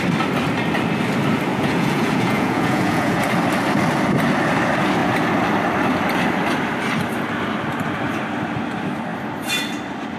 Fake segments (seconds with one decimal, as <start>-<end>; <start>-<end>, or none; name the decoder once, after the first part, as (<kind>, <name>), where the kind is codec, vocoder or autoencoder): 1.5-3.2 (vocoder, Vocos)